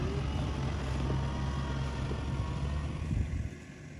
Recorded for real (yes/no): yes